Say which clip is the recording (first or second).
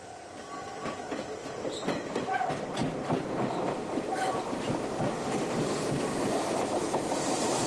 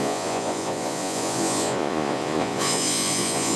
first